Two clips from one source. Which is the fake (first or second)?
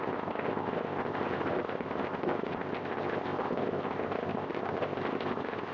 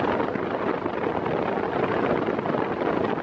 first